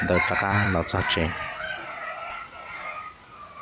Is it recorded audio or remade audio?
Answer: remade